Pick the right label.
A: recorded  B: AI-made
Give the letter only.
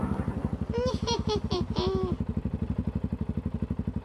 A